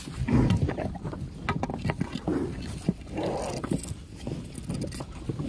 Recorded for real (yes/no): yes